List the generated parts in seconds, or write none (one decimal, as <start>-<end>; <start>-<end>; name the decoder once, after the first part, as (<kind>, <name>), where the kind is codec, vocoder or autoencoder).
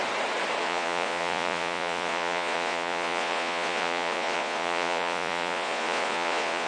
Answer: 0.6-6.7 (vocoder, Vocos)